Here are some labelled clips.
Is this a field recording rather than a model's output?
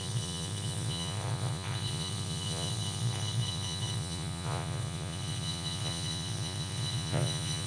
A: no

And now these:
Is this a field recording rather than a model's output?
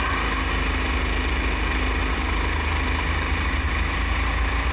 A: yes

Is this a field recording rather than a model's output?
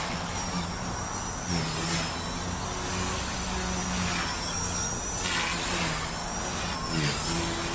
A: yes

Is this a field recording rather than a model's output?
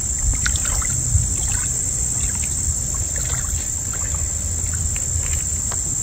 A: yes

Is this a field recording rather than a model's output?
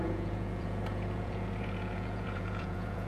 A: no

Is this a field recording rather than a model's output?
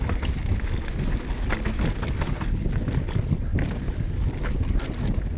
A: yes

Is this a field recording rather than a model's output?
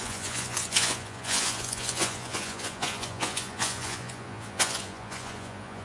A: no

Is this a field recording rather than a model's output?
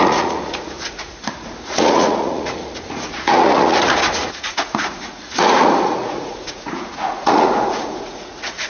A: no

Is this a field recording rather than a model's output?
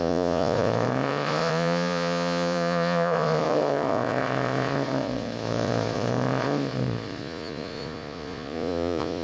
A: no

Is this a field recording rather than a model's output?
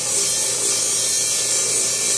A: yes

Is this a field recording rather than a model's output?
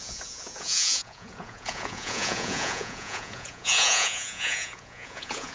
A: no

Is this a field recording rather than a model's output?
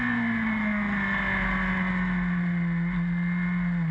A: yes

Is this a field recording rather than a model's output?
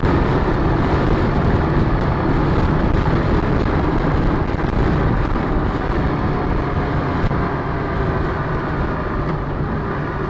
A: yes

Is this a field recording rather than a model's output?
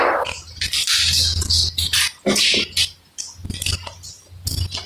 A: yes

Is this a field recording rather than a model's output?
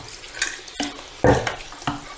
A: yes